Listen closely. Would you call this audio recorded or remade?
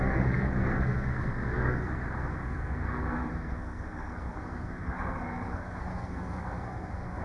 remade